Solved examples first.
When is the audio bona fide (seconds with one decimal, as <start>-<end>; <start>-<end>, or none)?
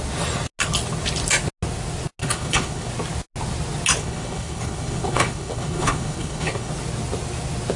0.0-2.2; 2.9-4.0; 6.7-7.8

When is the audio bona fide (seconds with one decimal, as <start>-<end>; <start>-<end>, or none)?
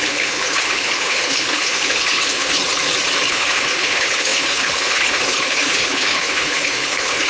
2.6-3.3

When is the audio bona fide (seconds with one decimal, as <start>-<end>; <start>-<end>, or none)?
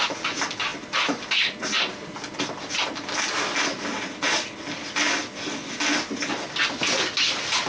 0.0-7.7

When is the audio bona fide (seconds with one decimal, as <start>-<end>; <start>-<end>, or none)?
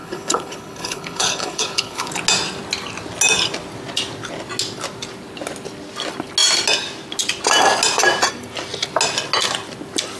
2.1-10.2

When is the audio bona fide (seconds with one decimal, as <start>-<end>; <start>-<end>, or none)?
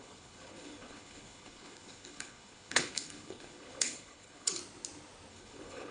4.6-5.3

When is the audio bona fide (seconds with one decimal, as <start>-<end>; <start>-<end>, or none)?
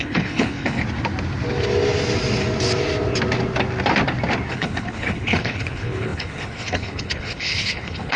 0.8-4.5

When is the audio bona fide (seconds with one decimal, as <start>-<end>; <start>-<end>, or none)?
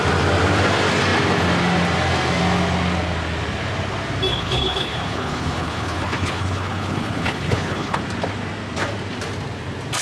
0.0-4.3; 8.0-10.0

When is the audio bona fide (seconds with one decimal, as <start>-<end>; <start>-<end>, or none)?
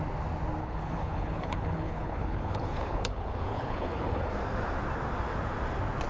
0.0-0.6; 4.3-6.1